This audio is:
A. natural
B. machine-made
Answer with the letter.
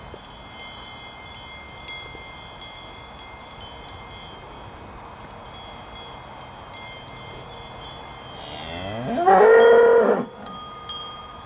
A